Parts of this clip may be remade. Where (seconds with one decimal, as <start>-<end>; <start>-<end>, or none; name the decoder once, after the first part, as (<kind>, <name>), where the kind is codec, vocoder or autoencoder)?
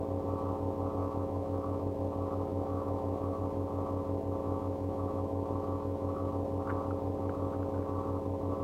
1.0-1.8 (autoencoder, DAC-VAE); 2.5-3.4; 4.4-6.3